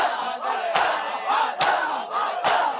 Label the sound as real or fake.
real